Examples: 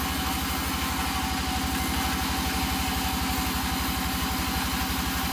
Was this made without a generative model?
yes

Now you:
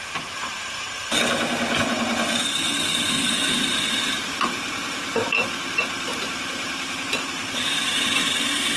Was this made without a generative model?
no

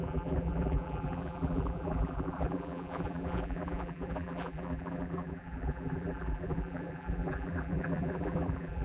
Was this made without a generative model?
no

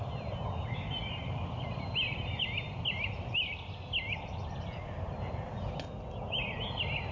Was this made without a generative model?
yes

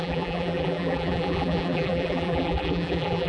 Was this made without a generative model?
no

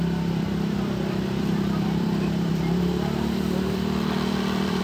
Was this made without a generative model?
no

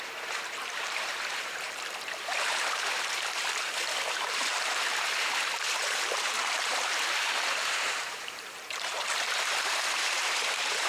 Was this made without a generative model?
no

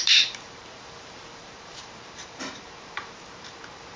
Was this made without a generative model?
no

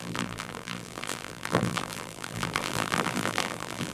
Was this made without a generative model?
no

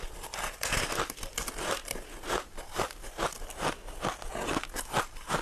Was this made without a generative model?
yes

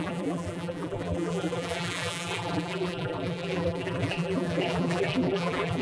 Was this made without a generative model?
no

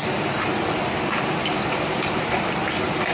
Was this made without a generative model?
yes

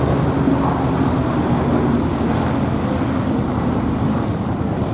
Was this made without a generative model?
yes